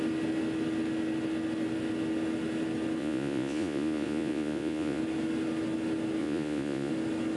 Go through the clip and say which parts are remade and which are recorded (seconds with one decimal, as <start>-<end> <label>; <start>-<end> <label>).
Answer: 0.0-3.0 recorded; 3.0-5.0 remade; 5.0-6.2 recorded; 6.2-6.9 remade; 6.9-7.4 recorded